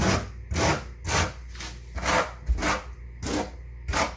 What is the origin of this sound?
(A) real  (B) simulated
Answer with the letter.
A